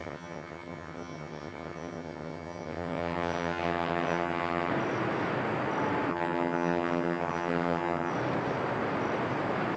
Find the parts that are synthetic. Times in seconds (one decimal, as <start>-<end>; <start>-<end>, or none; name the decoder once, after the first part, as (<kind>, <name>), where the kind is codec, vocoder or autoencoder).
0.0-4.7 (vocoder, HiFi-GAN); 6.1-8.1